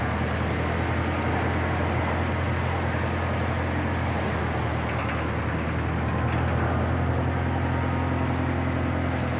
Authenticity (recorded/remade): recorded